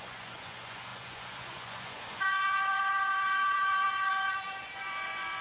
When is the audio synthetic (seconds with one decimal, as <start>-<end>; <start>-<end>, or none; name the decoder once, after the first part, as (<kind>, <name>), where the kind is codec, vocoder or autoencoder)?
0.0-5.4 (vocoder, Vocos)